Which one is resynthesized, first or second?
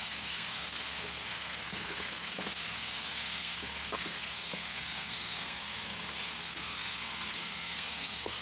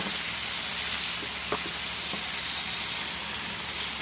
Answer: first